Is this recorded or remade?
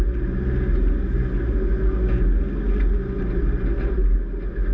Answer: recorded